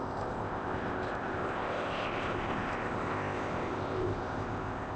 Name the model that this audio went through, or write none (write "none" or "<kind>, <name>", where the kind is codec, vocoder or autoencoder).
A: codec, ZipCodec